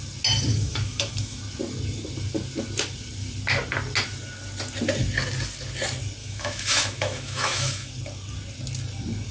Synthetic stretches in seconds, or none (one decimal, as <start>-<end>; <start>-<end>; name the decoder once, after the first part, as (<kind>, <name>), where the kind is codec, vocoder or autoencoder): 0.5-1.4 (autoencoder, DAC-VAE); 6.2-7.9